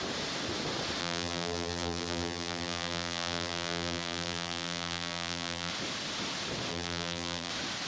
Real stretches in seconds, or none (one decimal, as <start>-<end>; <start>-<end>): 0.0-1.0; 5.7-6.7; 7.5-7.9